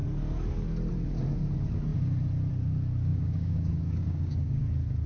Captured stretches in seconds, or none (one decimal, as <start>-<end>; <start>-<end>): 0.0-3.1; 4.6-5.1